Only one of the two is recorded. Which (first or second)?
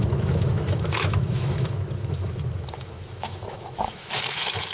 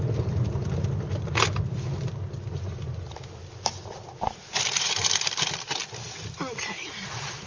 second